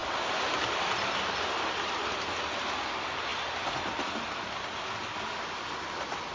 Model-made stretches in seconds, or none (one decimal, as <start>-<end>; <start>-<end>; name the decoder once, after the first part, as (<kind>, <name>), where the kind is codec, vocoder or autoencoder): none